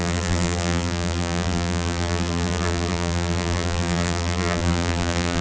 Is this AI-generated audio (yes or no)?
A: yes